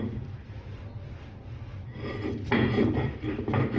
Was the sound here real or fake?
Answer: fake